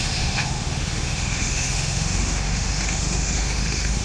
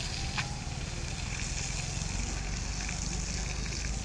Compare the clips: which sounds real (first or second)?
second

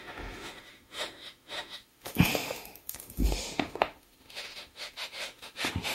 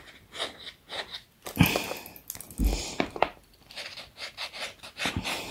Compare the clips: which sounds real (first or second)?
second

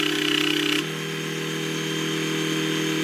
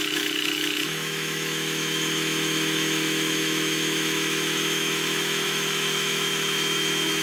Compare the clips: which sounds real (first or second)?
first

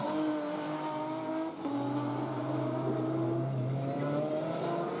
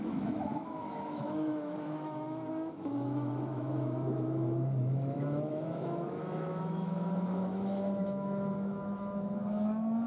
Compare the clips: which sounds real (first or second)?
first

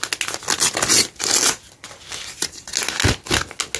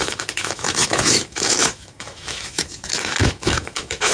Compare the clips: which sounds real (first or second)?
first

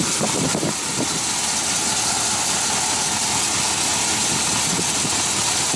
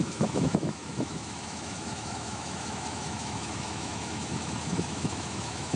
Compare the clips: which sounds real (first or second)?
first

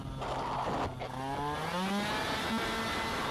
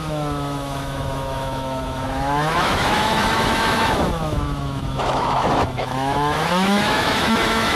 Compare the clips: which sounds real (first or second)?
first